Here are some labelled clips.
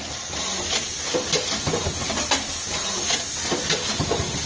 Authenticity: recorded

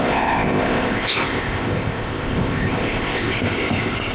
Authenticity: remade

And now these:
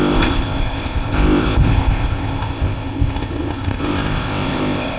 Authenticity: remade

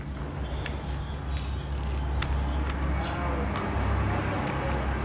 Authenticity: recorded